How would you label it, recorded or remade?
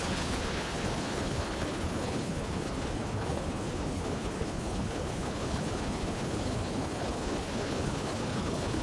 remade